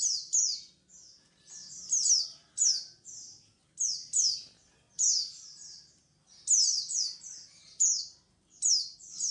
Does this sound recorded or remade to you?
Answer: recorded